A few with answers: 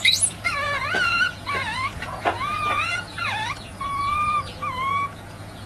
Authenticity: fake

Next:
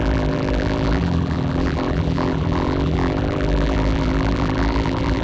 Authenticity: fake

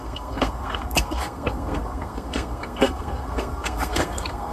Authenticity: fake